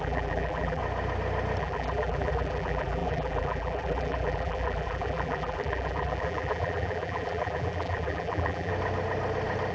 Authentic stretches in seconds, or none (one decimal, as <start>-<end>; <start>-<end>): 0.8-1.6; 8.7-9.7